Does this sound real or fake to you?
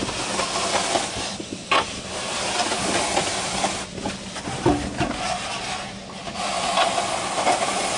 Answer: real